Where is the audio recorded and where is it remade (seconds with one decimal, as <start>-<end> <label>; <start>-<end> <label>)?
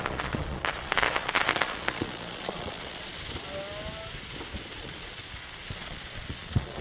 0.0-3.1 remade; 3.1-4.7 recorded; 4.7-5.2 remade; 5.2-5.8 recorded; 5.8-6.8 remade